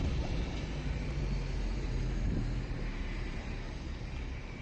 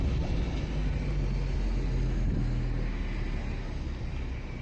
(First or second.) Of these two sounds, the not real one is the first